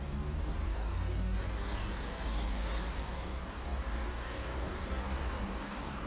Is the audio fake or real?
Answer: fake